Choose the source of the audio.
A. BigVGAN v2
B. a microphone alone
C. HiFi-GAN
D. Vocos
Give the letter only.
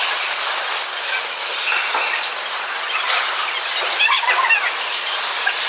B